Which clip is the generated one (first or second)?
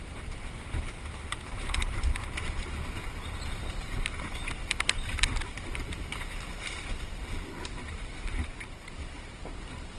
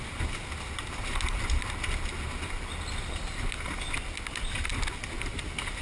first